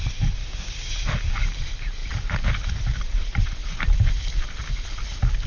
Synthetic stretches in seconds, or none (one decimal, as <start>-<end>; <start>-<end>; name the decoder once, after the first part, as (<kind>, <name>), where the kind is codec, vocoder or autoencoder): 0.4-0.9 (codec, DAC)